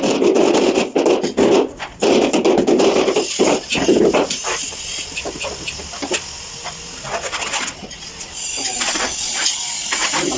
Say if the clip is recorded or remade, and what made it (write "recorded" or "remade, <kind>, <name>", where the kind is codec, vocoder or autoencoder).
recorded